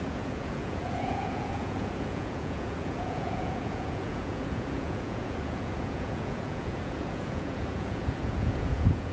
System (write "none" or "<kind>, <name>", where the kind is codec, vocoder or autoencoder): vocoder, Vocos